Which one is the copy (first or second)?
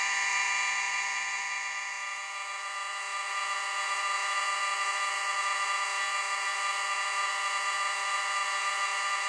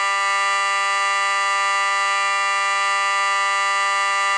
first